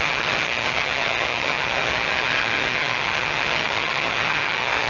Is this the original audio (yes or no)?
no